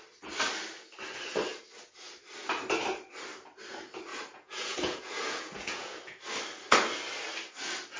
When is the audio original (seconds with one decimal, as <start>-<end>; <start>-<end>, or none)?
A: 0.0-4.1; 6.0-8.0